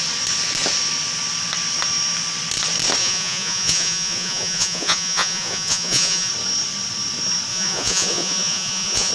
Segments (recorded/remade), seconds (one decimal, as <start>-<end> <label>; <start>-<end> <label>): 0.0-3.0 recorded; 3.0-6.3 remade; 6.3-7.5 recorded; 7.5-9.1 remade